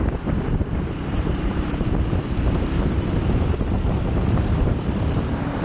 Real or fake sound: fake